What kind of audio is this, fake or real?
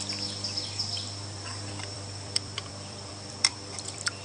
fake